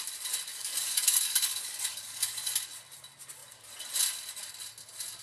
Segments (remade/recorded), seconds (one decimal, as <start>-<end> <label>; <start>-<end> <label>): 0.0-0.5 recorded; 0.5-2.6 remade; 2.6-5.2 recorded